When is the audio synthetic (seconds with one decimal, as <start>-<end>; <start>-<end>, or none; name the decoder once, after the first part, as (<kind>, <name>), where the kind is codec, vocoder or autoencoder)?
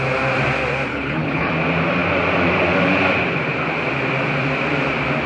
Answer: 0.9-1.5 (codec, HILCodec)